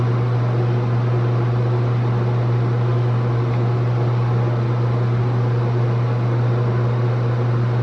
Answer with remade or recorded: recorded